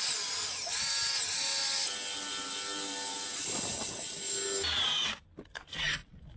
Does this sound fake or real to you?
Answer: real